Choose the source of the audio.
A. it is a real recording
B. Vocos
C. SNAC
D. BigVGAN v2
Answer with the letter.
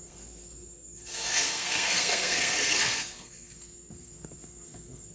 C